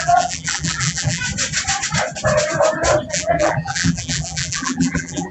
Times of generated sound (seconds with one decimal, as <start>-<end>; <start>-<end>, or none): 0.0-1.2; 3.1-5.3